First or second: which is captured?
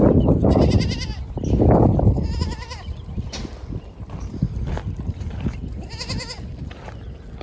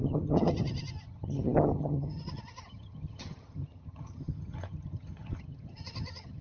first